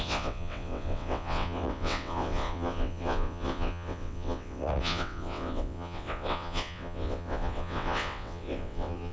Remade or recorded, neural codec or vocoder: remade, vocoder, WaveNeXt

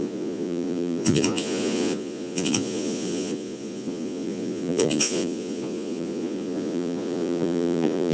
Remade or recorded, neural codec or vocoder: remade, vocoder, Vocos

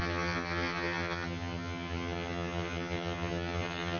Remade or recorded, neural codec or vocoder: remade, vocoder, HiFi-GAN